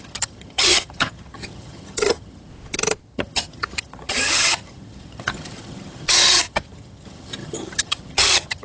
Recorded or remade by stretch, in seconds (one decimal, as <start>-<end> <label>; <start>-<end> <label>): 0.0-2.5 remade; 2.5-3.0 recorded; 3.0-8.6 remade